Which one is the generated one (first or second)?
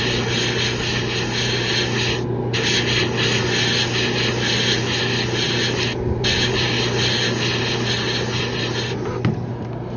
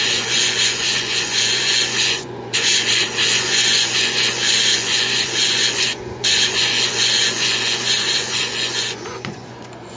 second